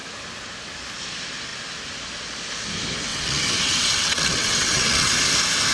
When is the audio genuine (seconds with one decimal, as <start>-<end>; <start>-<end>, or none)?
0.0-3.1; 5.1-5.7